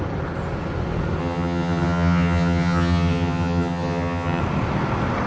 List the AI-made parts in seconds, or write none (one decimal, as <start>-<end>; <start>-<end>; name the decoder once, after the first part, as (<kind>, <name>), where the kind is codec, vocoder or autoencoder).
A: 1.2-4.4 (vocoder, HiFi-GAN)